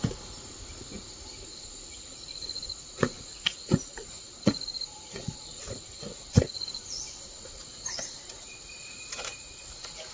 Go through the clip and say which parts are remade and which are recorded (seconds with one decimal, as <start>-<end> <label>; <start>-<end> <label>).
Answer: 0.0-10.1 remade

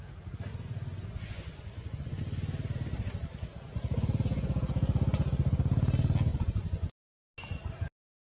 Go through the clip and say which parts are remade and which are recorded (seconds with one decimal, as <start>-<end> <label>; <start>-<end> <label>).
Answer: 0.0-0.5 recorded; 0.5-2.2 remade; 2.2-6.3 recorded; 6.3-6.9 remade; 6.9-8.3 recorded